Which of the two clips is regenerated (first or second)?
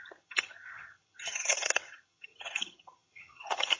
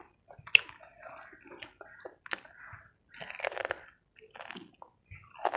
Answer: first